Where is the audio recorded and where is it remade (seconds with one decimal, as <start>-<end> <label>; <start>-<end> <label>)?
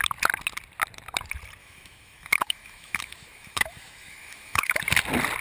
0.0-1.6 recorded; 1.6-4.8 remade; 4.8-5.4 recorded